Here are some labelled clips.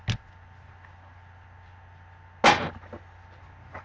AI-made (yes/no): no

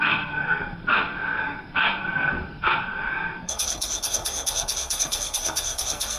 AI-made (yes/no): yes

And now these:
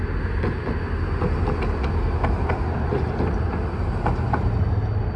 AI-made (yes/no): no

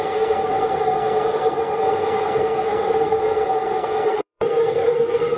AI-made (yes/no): yes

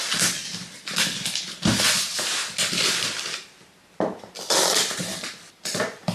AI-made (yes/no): no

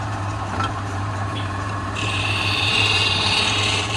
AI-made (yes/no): yes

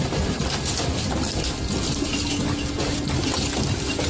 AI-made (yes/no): no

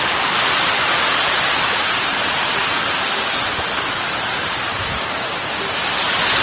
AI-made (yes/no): no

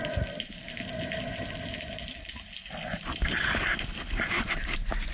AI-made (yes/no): no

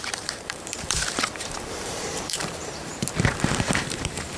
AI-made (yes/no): yes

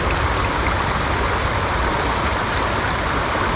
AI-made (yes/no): no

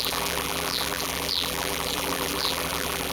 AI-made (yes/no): yes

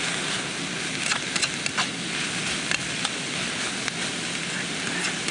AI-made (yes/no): no